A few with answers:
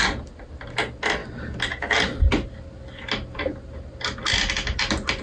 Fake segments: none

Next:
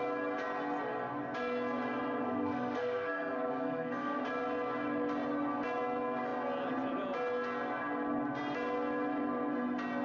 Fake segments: 2.2-4.2 (codec, SNAC)

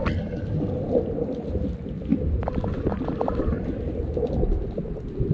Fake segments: none

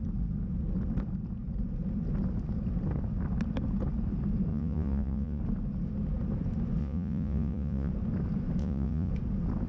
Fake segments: 4.5-5.4 (vocoder, Vocos); 6.8-7.9; 8.6-9.1

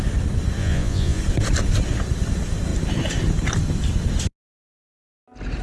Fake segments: 0.6-1.2 (vocoder, Vocos)

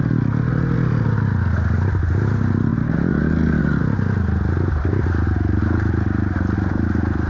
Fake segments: none

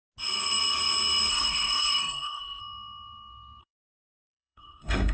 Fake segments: 1.3-2.6 (codec, SNAC); 3.6-5.1